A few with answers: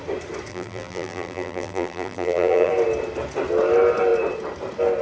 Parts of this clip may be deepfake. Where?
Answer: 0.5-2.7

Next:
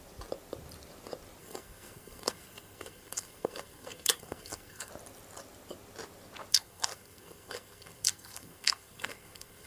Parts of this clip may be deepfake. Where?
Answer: 1.4-4.9; 6.5-9.7

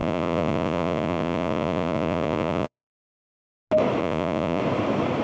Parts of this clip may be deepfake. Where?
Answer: 0.0-3.1; 4.0-4.6

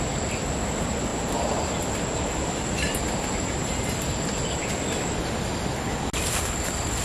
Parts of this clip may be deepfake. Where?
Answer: 1.1-1.6; 2.2-4.7

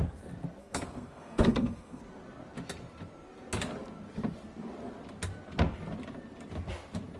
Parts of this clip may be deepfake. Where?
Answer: 0.6-2.0